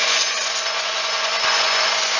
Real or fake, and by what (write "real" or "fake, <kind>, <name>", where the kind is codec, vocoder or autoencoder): fake, vocoder, Vocos